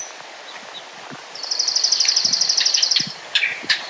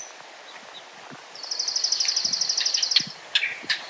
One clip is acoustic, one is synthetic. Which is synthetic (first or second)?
first